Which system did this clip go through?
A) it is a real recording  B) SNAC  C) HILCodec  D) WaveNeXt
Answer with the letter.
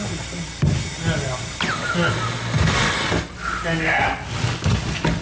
A